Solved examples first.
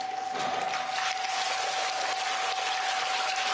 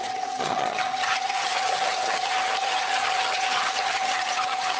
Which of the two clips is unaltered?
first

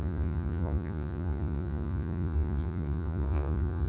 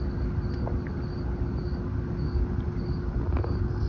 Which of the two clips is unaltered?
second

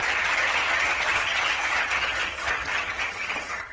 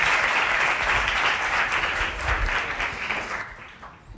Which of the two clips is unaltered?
second